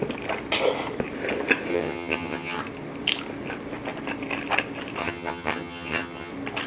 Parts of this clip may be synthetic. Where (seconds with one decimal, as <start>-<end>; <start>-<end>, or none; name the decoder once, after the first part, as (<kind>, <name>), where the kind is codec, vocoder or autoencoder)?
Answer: 1.7-2.6 (vocoder, HiFi-GAN); 5.0-6.3